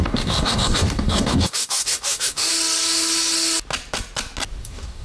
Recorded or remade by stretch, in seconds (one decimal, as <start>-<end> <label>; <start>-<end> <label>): 0.0-2.5 remade; 2.5-4.6 recorded; 4.6-5.0 remade